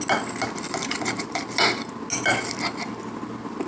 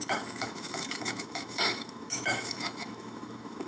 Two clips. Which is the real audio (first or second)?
first